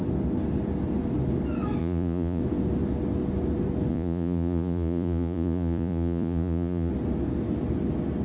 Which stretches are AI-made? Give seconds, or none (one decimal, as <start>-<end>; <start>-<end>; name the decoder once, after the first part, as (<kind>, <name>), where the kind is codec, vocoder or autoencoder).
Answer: 1.8-2.4 (vocoder, Vocos); 3.9-6.9